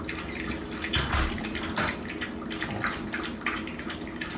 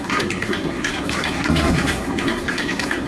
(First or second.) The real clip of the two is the first